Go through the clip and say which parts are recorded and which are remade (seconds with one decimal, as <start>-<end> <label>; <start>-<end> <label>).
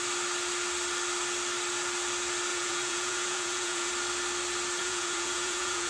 0.0-2.5 recorded; 2.5-3.9 remade; 3.9-4.8 recorded; 4.8-5.9 remade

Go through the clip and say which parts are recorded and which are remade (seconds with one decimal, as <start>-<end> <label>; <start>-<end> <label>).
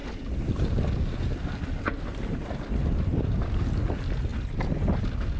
0.0-0.6 remade; 0.6-1.9 recorded; 1.9-3.6 remade; 3.6-5.4 recorded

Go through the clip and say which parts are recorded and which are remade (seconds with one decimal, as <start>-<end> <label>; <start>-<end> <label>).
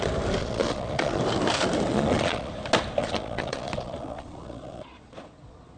0.0-0.4 recorded; 0.4-1.2 remade; 1.2-1.9 recorded; 1.9-2.5 remade; 2.5-3.0 recorded; 3.0-5.8 remade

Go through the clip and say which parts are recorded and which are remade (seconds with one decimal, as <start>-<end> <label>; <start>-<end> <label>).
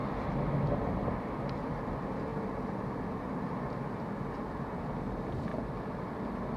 0.0-6.6 recorded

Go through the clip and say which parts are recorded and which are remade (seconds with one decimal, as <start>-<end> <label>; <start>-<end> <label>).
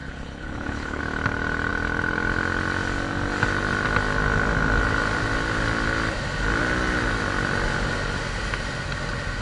0.0-1.0 remade; 1.0-9.4 recorded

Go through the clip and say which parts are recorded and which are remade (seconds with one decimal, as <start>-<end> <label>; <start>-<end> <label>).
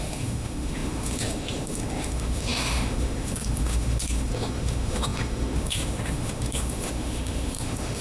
0.0-8.0 remade